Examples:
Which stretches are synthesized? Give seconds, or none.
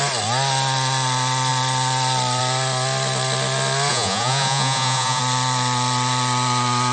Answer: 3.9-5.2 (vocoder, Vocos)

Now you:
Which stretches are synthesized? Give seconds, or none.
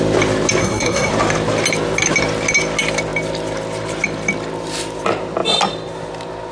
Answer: 0.6-1.1 (codec, SNAC)